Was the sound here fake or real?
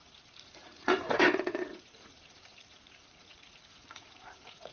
fake